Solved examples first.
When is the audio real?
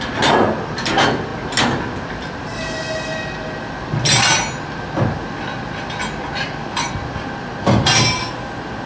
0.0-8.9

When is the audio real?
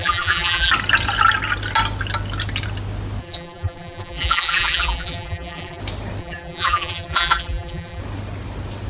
0.7-3.2; 5.8-6.2; 8.0-8.9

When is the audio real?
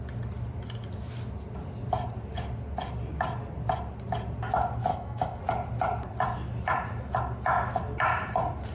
0.0-4.9; 5.4-8.7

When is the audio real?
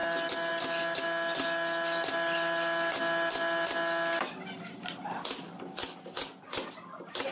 0.0-7.3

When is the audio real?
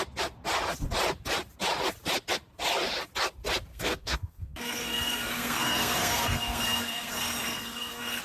0.0-3.7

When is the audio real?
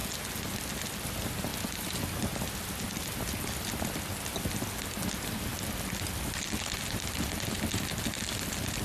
0.0-8.8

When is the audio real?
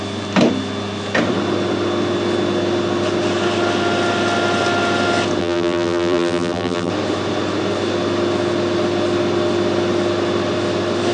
0.0-5.4; 6.9-11.1